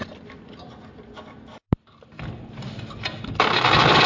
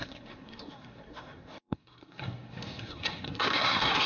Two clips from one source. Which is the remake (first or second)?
second